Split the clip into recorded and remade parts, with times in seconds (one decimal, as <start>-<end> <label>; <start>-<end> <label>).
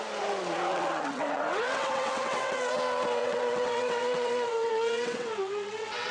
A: 0.0-0.7 recorded; 0.7-2.7 remade; 2.7-3.2 recorded; 3.2-6.1 remade